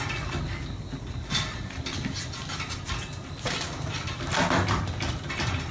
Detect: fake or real real